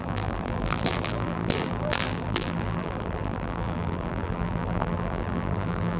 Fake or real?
fake